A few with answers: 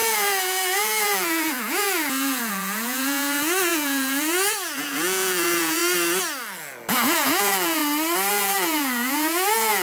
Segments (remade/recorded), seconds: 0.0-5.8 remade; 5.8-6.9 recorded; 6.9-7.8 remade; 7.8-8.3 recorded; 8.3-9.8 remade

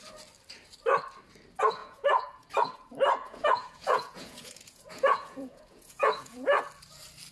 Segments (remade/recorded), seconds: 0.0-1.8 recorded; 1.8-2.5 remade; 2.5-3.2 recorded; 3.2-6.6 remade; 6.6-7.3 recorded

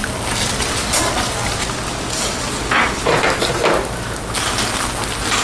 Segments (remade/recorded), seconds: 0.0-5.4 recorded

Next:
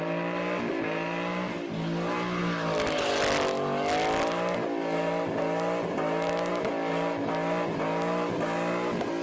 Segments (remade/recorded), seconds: 0.0-9.2 recorded

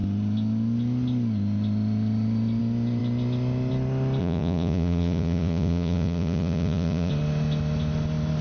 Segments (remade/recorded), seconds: 0.0-4.2 recorded; 4.2-7.1 remade; 7.1-8.4 recorded